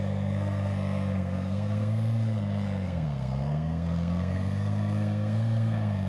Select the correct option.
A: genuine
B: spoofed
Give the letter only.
B